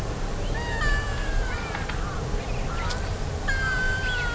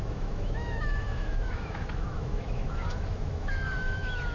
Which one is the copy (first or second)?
second